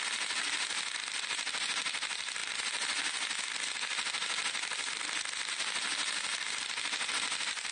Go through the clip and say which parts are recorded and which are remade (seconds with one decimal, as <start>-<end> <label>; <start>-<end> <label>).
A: 0.0-7.7 recorded